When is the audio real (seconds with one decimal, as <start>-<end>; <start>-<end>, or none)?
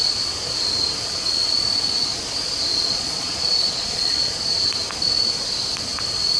0.0-2.7; 4.4-6.4